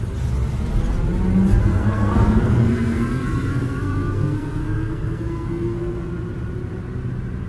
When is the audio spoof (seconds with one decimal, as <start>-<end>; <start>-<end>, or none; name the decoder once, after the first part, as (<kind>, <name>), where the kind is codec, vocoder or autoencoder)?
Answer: 1.6-6.1 (codec, SNAC)